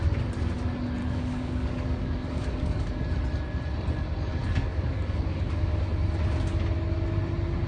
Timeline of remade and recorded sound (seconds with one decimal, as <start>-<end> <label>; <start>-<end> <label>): 0.0-1.0 recorded; 1.0-2.9 remade; 2.9-4.3 recorded; 4.3-5.8 remade; 5.8-7.7 recorded